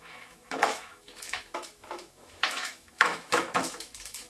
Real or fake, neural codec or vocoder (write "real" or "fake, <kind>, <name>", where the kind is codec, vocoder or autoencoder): fake, autoencoder, DAC-VAE